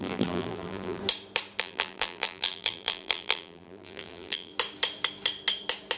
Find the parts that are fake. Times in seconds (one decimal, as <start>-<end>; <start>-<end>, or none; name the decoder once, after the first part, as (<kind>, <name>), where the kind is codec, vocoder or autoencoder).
0.0-1.0 (vocoder, BigVGAN v2); 1.6-4.5